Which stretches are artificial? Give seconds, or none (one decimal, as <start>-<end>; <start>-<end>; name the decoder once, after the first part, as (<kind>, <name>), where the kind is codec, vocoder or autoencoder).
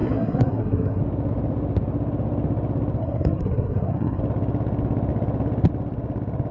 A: 0.0-1.0 (codec, SNAC); 3.0-4.2